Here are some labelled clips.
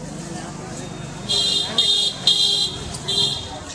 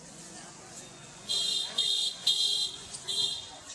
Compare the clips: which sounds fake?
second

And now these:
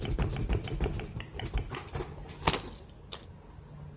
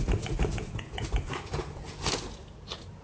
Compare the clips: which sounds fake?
second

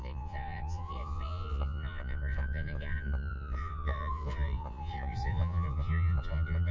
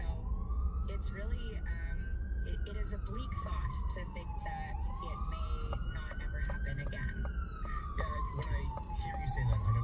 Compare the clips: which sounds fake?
first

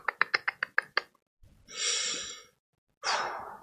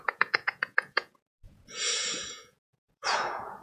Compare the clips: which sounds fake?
second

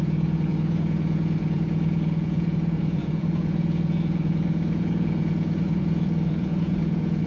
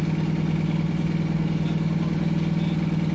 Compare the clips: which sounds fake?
first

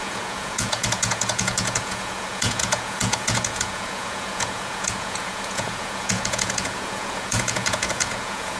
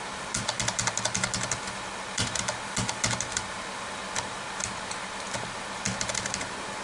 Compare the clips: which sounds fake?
first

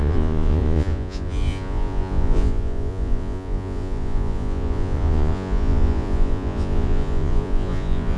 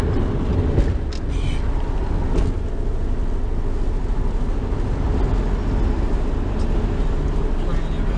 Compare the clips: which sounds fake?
first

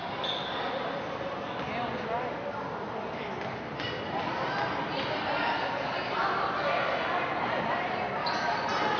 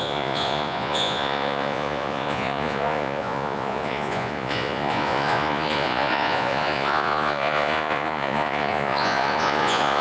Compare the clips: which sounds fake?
second